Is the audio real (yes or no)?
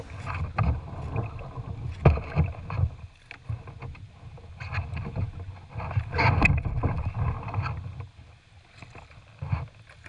yes